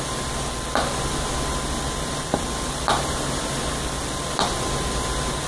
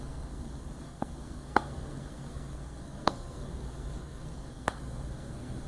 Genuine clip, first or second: first